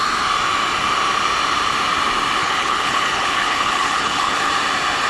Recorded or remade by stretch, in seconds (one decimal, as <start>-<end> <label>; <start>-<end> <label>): 0.0-2.4 recorded; 2.4-4.5 remade; 4.5-5.1 recorded